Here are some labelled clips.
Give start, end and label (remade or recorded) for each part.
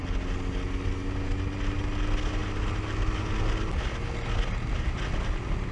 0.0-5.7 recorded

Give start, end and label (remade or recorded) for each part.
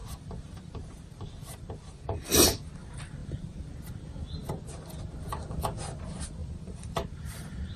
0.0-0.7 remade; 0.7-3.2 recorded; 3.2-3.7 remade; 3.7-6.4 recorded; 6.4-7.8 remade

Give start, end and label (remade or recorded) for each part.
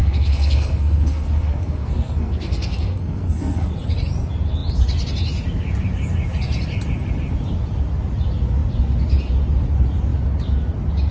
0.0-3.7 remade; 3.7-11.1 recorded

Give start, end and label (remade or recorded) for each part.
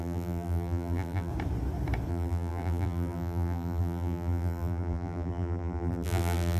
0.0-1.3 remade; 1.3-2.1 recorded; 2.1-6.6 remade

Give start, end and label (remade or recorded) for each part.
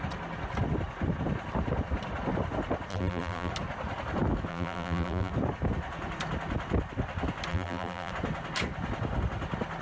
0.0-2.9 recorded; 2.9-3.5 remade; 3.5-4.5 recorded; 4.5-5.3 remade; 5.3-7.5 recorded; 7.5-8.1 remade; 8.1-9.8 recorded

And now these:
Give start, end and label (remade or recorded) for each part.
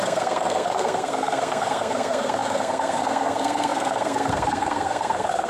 0.0-5.5 remade